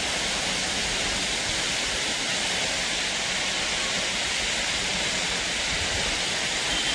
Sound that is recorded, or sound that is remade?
recorded